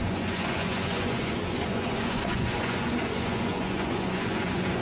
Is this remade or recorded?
remade